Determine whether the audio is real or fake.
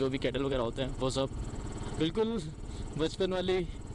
fake